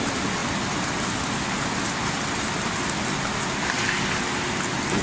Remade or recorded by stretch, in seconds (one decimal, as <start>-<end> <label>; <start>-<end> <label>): 0.0-5.0 recorded

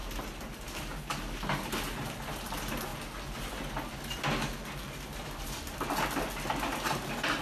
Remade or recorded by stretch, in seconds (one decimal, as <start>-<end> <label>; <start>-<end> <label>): 0.0-0.7 remade; 0.7-7.4 recorded

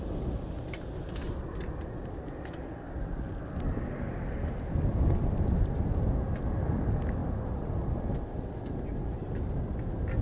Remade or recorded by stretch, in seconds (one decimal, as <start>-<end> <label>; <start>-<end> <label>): 0.0-10.2 recorded

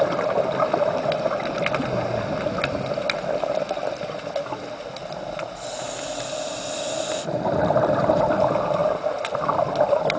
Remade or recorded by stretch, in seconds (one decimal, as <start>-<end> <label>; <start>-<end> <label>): 0.0-10.2 recorded

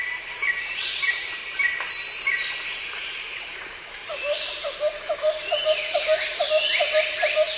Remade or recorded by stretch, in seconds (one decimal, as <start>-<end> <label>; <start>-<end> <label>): 0.0-1.4 remade; 1.4-3.3 recorded; 3.3-7.6 remade